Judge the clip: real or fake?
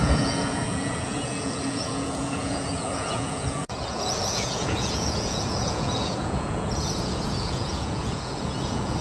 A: fake